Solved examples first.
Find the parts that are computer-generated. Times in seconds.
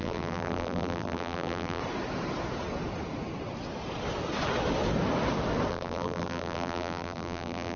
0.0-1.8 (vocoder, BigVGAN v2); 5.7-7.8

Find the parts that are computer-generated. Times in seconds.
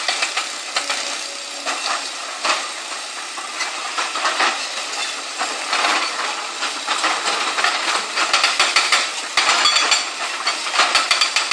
5.9-7.3 (vocoder, BigVGAN v2)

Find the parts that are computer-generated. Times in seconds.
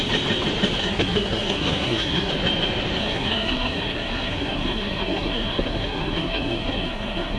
0.8-2.3 (codec, SNAC); 3.0-7.4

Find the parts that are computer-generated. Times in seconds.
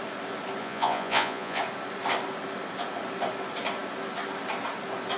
0.6-1.6 (vocoder, Vocos)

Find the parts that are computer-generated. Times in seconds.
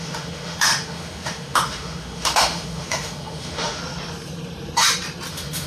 0.0-3.8 (autoencoder, DAC-VAE); 5.3-5.7